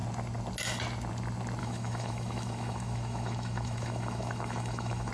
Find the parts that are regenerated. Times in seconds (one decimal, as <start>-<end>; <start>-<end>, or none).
1.6-5.1